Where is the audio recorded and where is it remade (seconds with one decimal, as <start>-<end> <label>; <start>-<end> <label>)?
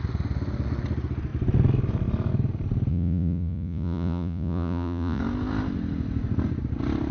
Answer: 0.0-2.9 recorded; 2.9-5.2 remade; 5.2-7.1 recorded